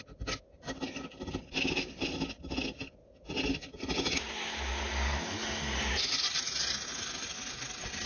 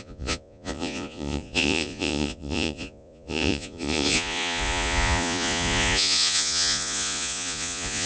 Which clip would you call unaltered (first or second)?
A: first